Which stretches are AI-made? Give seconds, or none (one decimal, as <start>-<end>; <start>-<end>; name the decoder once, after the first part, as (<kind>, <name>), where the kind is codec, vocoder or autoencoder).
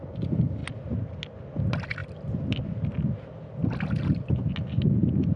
none